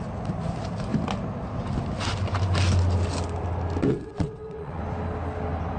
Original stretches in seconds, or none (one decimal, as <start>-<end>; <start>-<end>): 0.0-3.9; 4.8-5.8